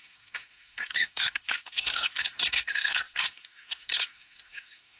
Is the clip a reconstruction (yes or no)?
yes